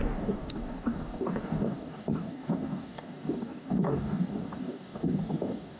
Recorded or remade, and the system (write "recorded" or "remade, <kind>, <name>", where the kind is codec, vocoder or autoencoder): remade, codec, DAC